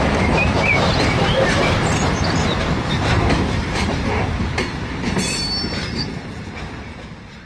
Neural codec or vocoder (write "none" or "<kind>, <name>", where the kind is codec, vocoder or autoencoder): vocoder, BigVGAN v2